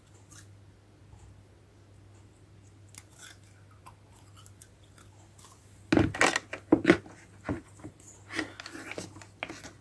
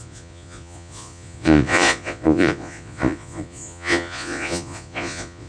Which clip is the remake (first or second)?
second